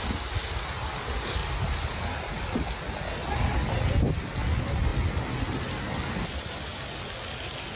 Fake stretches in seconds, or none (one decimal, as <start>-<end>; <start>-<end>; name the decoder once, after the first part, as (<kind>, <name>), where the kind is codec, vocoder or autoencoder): none